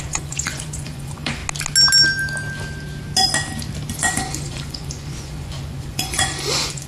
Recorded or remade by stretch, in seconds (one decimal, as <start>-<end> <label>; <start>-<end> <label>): 0.0-1.4 remade; 1.4-4.0 recorded; 4.0-6.9 remade